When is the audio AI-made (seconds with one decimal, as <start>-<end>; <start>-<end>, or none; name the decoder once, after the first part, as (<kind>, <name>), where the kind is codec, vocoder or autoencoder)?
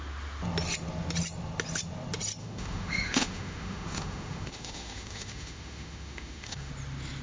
2.4-6.7 (autoencoder, DAC-VAE)